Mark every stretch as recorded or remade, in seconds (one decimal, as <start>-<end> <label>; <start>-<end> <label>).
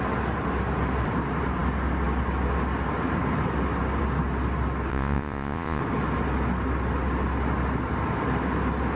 0.0-4.9 recorded; 4.9-5.8 remade; 5.8-9.0 recorded